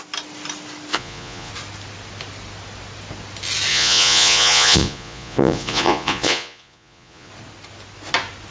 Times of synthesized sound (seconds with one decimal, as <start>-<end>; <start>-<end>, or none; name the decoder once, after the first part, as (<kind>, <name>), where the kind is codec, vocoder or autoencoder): 0.9-1.5 (vocoder, Vocos); 3.7-7.3